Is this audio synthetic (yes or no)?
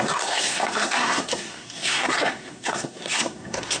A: yes